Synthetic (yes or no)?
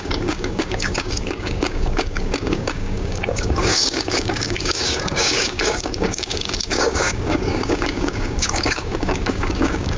yes